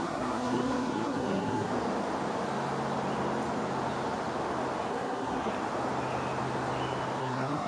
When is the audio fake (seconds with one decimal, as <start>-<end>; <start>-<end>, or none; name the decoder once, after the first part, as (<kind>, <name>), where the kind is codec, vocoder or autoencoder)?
0.0-1.7 (codec, SNAC); 4.9-5.5; 7.2-7.7